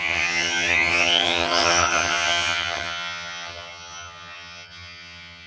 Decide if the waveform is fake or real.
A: fake